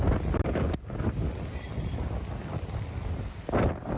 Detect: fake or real real